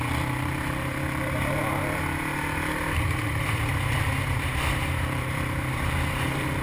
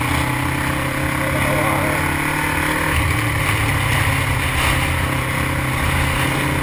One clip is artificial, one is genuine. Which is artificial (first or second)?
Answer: first